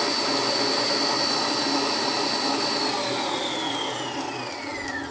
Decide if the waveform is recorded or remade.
recorded